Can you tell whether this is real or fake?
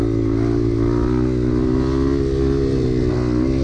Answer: real